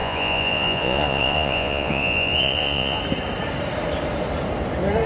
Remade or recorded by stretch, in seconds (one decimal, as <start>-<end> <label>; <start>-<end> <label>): 0.0-3.0 remade; 3.0-5.1 recorded